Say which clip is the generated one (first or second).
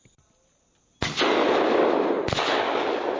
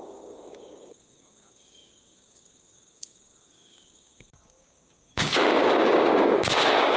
second